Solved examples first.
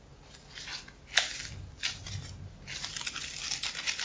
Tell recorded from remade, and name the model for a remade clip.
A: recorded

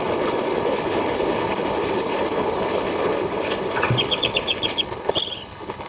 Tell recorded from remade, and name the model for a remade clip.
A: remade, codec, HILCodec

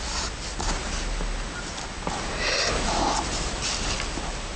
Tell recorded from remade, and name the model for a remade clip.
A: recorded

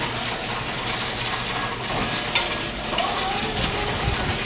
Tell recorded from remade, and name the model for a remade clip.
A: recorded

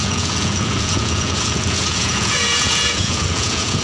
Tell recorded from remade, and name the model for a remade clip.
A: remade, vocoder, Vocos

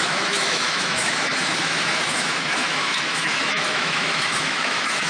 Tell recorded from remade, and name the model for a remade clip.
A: remade, autoencoder, DAC-VAE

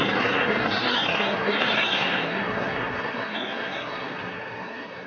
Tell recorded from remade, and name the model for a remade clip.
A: remade, codec, SNAC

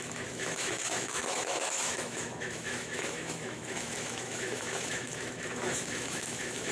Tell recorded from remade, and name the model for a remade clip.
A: remade, autoencoder, DAC-VAE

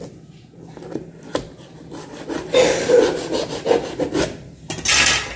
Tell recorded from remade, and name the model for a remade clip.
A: recorded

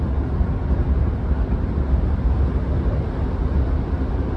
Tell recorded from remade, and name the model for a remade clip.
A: recorded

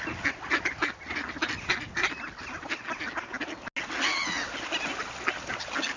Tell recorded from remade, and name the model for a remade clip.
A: recorded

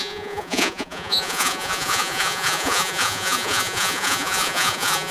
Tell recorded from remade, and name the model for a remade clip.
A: remade, vocoder, Vocos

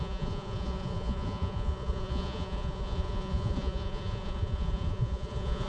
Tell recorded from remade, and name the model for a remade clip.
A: remade, vocoder, Vocos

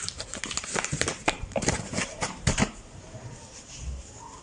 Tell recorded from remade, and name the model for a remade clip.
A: remade, vocoder, BigVGAN v2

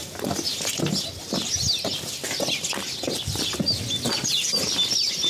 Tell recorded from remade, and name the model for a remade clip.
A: recorded